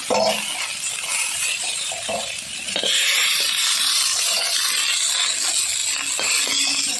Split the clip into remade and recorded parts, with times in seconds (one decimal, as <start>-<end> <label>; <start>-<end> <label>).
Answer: 0.0-1.1 recorded; 1.1-4.6 remade; 4.6-7.0 recorded